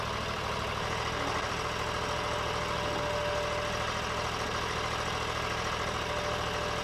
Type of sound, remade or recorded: recorded